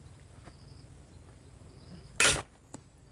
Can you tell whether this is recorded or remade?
recorded